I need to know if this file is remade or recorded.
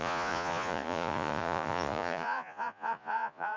remade